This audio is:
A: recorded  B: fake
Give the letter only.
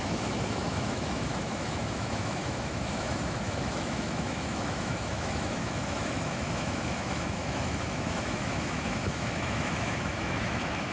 B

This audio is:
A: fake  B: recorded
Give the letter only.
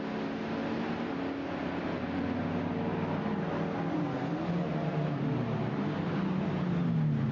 B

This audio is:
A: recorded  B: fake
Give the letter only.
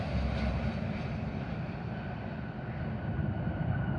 A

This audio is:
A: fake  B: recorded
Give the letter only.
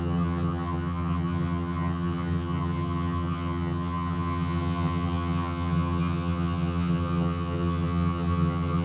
A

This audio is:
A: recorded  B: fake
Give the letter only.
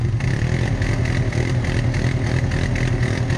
A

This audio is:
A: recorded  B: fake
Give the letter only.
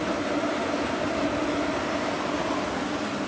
A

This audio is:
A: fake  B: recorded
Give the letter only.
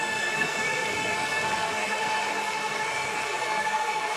A